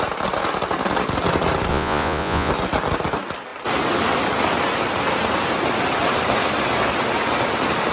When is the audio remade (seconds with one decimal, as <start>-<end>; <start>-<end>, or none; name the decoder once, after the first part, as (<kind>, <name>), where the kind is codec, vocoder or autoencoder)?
1.7-2.5 (vocoder, Vocos)